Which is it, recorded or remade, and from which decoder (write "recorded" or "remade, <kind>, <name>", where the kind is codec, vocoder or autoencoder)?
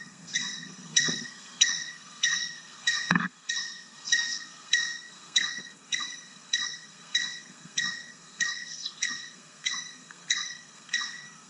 remade, codec, SNAC